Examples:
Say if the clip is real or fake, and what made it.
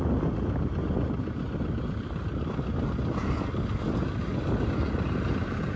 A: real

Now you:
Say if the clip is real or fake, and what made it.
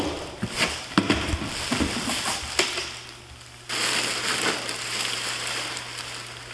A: real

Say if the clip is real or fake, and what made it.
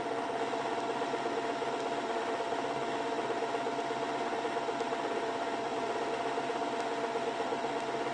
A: real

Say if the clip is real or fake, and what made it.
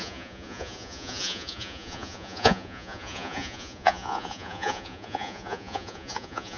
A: fake, vocoder, Vocos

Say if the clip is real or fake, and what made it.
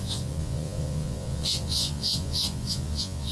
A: fake, vocoder, Vocos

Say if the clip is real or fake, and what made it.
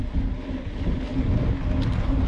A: real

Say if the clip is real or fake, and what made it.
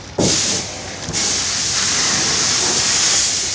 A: real